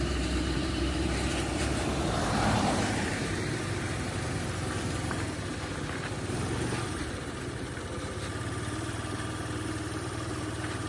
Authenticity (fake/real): fake